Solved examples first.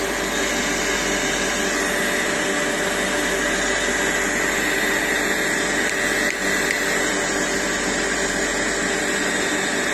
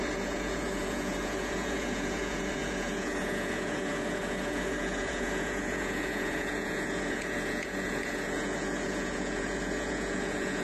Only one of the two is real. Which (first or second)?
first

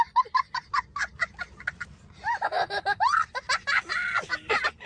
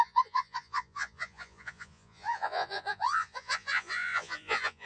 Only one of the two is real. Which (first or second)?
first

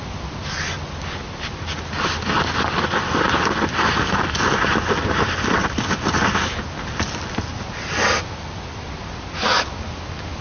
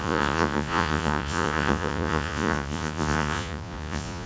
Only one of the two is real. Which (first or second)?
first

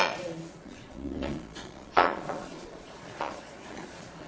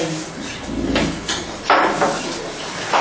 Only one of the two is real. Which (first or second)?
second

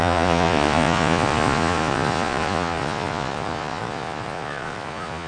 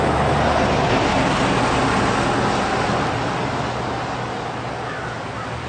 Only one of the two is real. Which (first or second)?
second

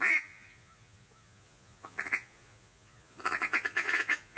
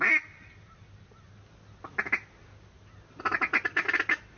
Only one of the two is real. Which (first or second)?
second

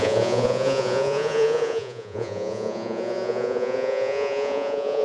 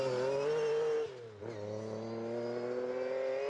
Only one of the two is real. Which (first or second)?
second